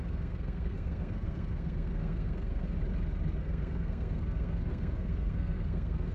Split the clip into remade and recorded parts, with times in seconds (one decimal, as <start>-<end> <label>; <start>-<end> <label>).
0.0-2.8 remade; 2.8-3.4 recorded; 3.4-6.1 remade